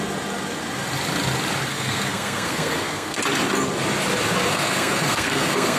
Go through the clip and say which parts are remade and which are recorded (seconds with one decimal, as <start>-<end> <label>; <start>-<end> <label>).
0.0-1.7 recorded; 1.7-3.2 remade; 3.2-4.5 recorded; 4.5-5.8 remade